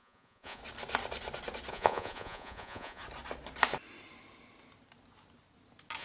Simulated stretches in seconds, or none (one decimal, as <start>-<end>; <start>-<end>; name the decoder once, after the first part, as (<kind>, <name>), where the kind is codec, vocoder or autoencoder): 0.0-0.6 (vocoder, Vocos); 1.7-3.0